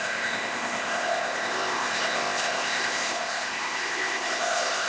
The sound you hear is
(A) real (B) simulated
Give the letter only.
B